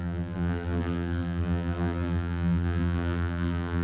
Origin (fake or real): fake